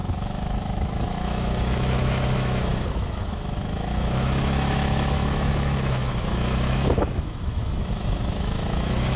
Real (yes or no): no